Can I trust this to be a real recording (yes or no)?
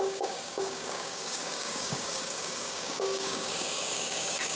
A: no